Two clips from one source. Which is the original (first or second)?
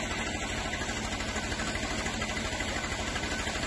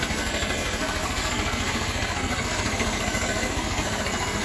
first